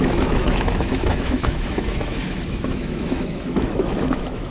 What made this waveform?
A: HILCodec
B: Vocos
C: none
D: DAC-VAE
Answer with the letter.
D